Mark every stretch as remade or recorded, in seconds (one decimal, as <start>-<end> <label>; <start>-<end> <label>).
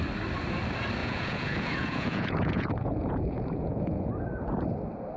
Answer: 0.0-1.0 recorded; 1.0-4.1 remade; 4.1-5.2 recorded